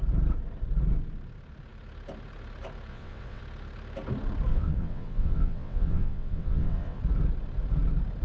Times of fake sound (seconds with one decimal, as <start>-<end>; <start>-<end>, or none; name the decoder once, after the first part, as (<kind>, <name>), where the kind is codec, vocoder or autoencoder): 2.9-3.4 (vocoder, WaveNeXt); 4.5-7.0